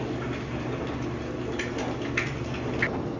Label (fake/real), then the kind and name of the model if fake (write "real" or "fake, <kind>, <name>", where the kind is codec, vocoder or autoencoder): real